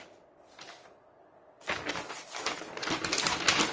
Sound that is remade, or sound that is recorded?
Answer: recorded